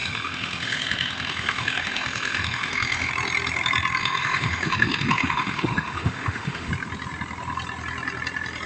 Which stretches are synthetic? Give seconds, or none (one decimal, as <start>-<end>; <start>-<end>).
0.0-3.1; 4.0-6.7